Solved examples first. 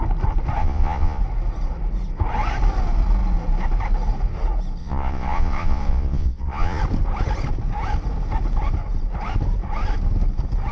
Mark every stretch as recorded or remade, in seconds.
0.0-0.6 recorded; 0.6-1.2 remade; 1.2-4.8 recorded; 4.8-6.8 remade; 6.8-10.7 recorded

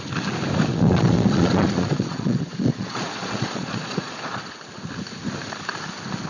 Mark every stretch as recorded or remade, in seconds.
0.0-0.7 recorded; 0.7-4.5 remade; 4.5-6.3 recorded

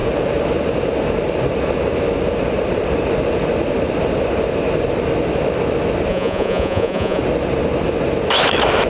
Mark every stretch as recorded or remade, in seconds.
0.0-6.1 recorded; 6.1-7.2 remade; 7.2-8.9 recorded

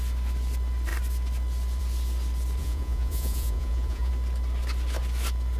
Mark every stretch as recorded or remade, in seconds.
0.0-2.6 recorded; 2.6-4.1 remade; 4.1-5.6 recorded

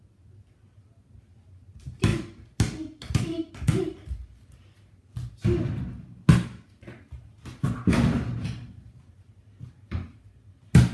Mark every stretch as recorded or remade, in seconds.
0.0-10.9 recorded

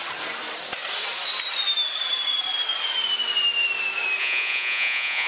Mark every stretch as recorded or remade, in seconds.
0.0-4.2 recorded; 4.2-5.3 remade